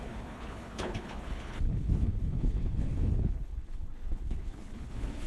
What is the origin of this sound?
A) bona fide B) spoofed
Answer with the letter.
B